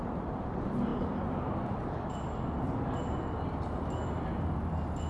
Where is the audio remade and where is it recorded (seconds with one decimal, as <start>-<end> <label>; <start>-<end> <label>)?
0.0-5.1 recorded